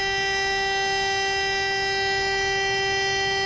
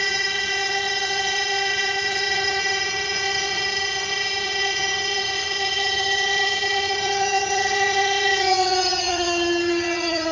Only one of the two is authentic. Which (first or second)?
first